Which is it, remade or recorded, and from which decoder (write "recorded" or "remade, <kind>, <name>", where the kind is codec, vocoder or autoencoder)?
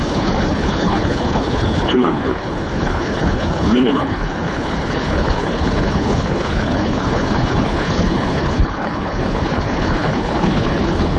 remade, codec, HILCodec